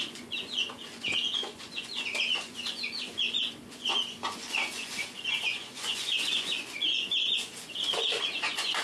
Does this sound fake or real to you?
fake